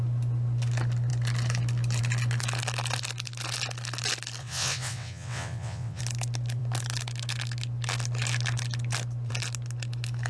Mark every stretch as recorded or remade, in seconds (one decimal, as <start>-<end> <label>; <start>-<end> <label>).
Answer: 0.0-4.4 recorded; 4.4-6.0 remade; 6.0-10.3 recorded